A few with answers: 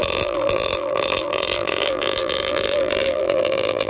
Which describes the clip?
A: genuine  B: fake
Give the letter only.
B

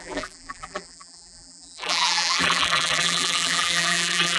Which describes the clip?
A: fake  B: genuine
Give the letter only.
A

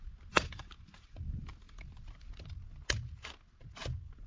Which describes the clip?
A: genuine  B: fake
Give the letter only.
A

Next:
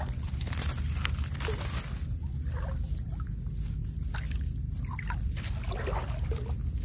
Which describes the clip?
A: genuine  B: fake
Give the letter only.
A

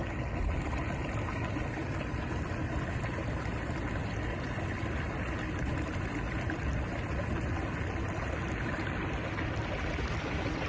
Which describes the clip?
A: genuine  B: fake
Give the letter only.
A